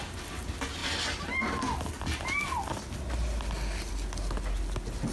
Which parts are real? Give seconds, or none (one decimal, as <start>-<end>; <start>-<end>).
0.0-5.1